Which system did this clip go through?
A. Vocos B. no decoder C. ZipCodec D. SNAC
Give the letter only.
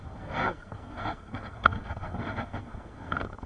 D